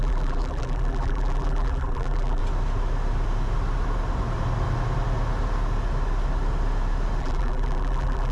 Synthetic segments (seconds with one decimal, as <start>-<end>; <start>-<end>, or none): 0.0-2.4; 7.2-8.3